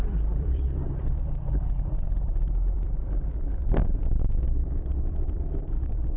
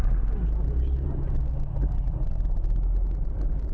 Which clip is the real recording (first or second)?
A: second